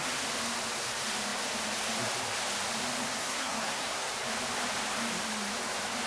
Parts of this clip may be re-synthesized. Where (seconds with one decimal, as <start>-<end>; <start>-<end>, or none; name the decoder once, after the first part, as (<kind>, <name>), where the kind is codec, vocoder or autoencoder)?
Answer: 3.2-4.1 (codec, SNAC)